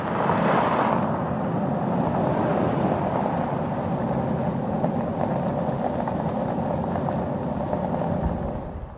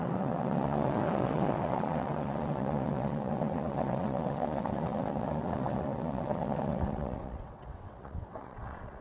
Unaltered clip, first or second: first